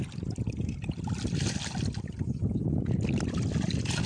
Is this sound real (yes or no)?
yes